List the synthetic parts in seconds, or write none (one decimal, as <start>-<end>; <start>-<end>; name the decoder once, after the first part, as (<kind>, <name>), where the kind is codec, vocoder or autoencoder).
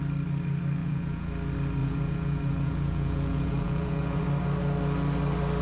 0.8-1.3 (vocoder, Vocos); 1.8-4.2